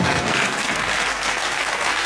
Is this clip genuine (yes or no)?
no